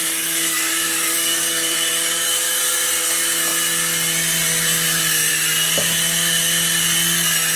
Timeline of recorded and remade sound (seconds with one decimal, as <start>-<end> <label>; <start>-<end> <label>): 0.0-2.6 remade; 2.6-7.6 recorded